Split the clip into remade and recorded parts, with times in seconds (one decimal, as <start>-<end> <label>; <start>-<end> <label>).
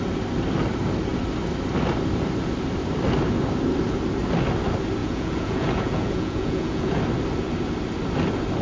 0.0-5.0 recorded; 5.0-7.0 remade; 7.0-8.6 recorded